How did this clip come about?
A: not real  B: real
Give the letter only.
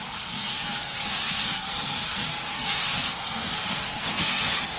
A